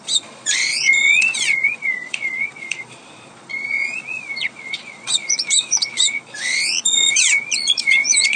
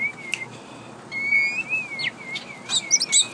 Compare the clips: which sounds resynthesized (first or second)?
first